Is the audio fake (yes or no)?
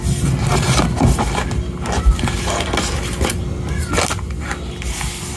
no